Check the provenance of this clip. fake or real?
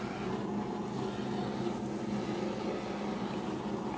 real